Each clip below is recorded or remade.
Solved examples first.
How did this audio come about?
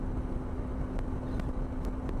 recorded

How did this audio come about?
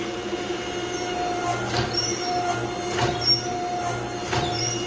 recorded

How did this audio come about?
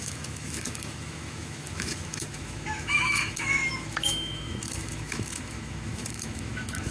remade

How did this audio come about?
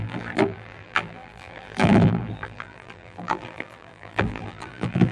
remade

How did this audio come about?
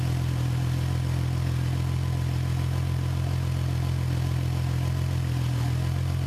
recorded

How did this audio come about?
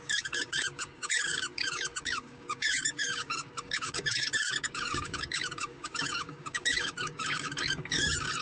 remade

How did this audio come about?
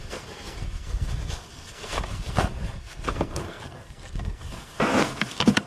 remade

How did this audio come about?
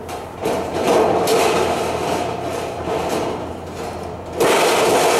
recorded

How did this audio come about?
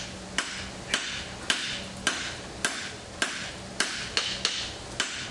recorded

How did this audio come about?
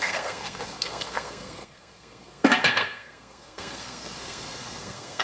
remade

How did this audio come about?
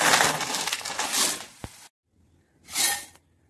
recorded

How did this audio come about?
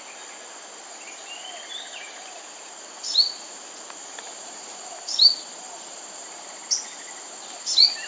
recorded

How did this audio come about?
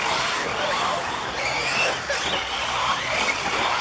recorded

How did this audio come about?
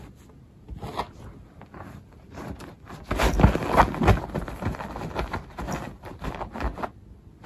recorded